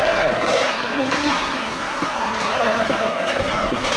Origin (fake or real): fake